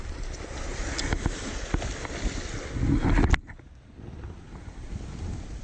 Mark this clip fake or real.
real